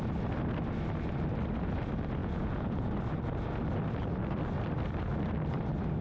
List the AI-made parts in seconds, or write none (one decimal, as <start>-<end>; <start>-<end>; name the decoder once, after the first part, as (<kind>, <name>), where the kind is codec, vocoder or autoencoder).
2.2-2.9 (vocoder, Vocos)